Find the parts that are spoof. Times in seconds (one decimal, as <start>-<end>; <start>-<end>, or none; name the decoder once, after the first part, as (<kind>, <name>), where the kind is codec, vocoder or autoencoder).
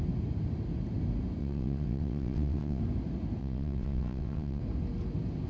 1.4-2.8 (vocoder, WaveNeXt); 3.4-4.6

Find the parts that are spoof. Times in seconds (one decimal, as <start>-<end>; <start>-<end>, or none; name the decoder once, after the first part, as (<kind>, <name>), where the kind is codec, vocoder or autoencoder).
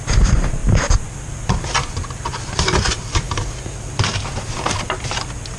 0.6-4.0 (vocoder, BigVGAN v2)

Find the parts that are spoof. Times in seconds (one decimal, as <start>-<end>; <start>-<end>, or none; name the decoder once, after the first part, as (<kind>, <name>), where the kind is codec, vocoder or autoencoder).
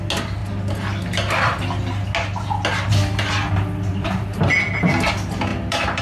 3.9-4.6 (vocoder, BigVGAN v2); 5.5-6.0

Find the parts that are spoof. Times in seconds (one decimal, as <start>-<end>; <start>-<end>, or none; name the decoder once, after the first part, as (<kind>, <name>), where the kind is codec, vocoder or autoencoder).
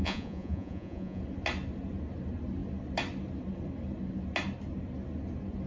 0.0-1.2 (vocoder, Vocos)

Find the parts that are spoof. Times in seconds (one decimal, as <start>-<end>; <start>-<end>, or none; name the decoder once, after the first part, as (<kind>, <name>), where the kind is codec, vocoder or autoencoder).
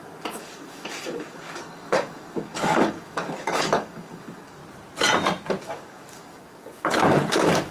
0.0-4.6 (codec, DAC); 5.6-7.7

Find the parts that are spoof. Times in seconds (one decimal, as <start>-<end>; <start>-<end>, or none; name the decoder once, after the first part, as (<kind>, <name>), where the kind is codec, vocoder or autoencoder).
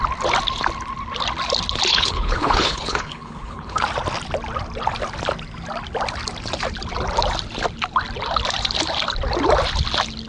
1.9-3.8 (codec, HILCodec)